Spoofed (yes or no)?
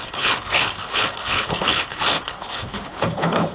yes